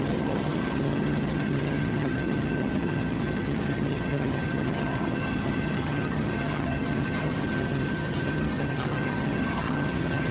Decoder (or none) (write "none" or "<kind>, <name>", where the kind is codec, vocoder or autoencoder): vocoder, HiFi-GAN